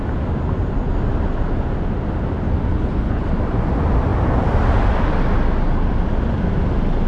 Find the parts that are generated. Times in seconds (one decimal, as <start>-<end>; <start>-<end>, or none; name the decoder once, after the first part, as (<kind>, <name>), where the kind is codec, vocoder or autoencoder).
2.7-3.3 (codec, HILCodec)